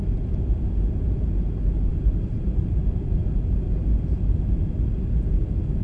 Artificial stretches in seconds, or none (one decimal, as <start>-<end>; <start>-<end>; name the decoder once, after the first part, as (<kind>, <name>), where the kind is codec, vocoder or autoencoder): 1.9-2.8 (vocoder, BigVGAN v2)